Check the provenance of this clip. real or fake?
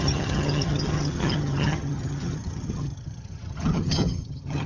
fake